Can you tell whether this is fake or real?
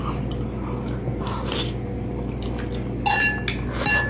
real